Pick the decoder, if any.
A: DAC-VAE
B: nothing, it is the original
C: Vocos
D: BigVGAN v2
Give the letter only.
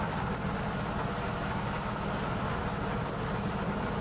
B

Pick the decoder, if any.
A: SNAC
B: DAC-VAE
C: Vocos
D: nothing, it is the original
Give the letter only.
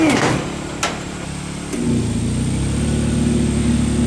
D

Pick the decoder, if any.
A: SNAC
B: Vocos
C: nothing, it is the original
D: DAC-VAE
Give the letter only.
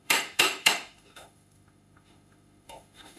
D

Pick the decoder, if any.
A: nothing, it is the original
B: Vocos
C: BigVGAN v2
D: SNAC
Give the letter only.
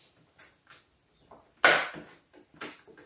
A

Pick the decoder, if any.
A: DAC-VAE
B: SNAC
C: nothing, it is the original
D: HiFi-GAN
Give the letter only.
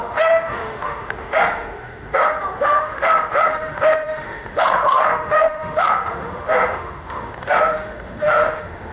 A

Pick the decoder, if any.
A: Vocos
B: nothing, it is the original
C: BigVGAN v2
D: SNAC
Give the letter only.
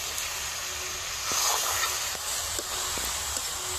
B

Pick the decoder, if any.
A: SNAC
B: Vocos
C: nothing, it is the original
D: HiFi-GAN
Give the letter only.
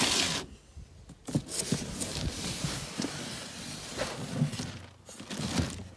C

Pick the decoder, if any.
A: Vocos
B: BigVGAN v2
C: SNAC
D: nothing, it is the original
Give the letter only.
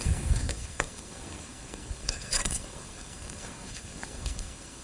C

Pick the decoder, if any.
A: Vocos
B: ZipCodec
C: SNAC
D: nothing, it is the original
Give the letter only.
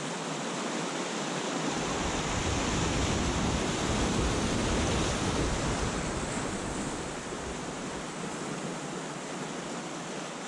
D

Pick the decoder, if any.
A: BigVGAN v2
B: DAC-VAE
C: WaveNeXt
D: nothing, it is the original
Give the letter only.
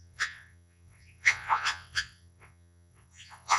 C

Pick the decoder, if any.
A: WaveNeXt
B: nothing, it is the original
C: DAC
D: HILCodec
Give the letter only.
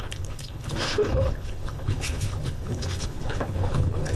D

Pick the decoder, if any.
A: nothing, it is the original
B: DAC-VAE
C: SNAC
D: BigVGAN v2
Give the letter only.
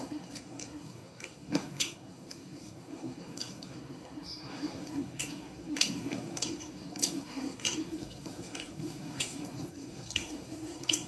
C